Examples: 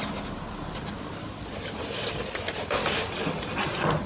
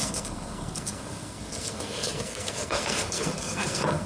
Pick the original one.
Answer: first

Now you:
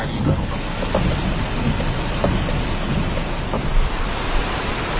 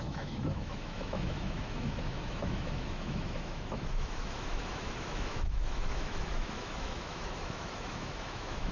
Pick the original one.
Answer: first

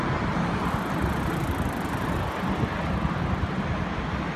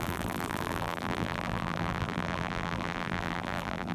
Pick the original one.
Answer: first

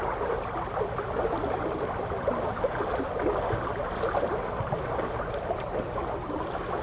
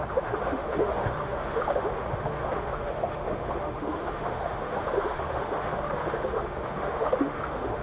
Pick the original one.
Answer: first